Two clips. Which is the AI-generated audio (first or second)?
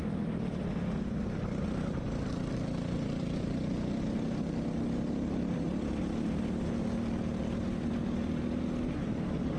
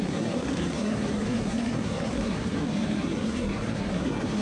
second